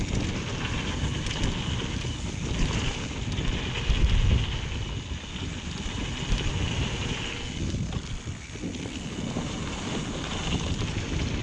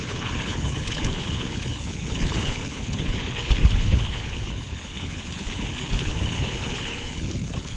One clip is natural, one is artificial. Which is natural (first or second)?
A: first